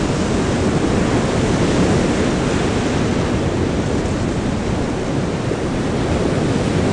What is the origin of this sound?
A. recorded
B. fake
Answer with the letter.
A